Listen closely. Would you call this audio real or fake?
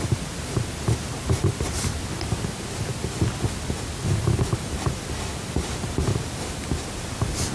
real